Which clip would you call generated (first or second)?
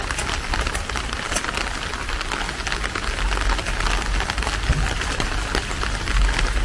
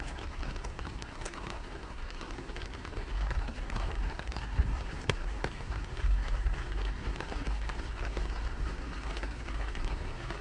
second